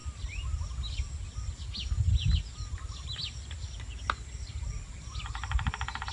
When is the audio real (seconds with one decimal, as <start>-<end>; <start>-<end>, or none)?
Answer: 0.0-6.1